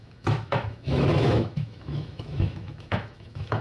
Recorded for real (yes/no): no